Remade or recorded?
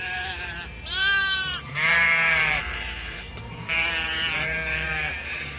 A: remade